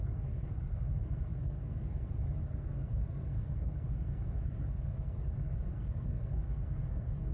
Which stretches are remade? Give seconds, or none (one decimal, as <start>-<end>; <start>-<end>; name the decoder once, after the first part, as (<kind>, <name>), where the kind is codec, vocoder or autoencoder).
0.0-7.3 (codec, SNAC)